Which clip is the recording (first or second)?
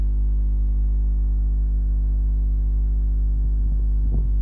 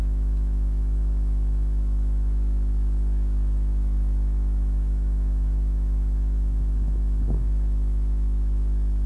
first